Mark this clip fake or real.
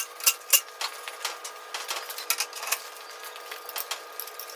real